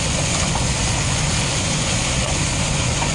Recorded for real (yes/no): no